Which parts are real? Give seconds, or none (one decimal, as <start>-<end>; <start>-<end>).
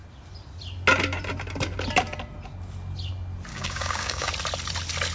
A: 0.0-3.5; 4.3-5.1